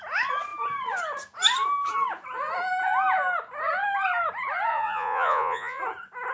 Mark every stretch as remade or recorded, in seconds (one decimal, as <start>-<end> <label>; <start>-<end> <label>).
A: 0.0-4.7 recorded; 4.7-5.8 remade; 5.8-6.3 recorded